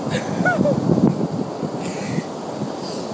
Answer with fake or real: real